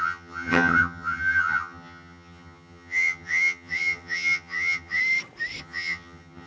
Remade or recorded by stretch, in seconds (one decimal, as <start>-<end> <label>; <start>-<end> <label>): 0.0-5.0 remade; 5.0-5.6 recorded; 5.6-6.5 remade